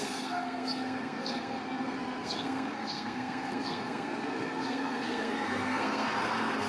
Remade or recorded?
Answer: remade